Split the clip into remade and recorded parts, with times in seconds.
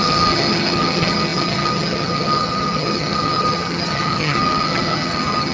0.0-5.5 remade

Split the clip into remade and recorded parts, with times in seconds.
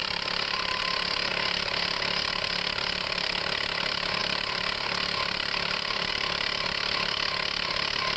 0.0-0.8 remade; 0.8-4.2 recorded; 4.2-6.1 remade; 6.1-8.2 recorded